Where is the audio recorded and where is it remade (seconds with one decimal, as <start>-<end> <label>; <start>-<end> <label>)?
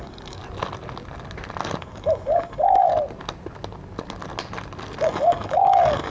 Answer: 0.0-0.4 remade; 0.4-1.8 recorded; 1.8-2.9 remade; 2.9-5.0 recorded; 5.0-6.1 remade